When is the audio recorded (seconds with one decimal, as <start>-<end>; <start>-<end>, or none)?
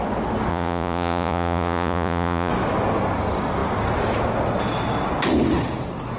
0.0-0.5; 2.5-6.2